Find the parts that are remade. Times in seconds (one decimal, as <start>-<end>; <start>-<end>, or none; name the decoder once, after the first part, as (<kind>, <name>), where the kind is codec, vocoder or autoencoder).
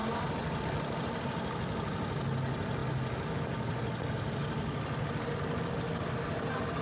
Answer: none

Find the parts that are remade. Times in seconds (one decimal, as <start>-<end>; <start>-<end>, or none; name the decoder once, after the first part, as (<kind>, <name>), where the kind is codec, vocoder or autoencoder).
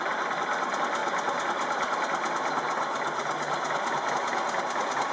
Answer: none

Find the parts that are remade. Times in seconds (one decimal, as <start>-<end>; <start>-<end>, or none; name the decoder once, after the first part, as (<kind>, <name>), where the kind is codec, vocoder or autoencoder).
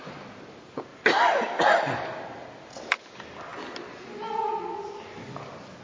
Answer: none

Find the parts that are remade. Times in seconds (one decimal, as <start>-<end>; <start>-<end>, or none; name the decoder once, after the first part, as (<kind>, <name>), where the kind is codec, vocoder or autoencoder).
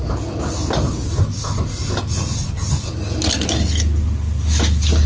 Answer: none